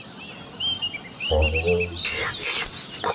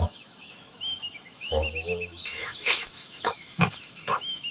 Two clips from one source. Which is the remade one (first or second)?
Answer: second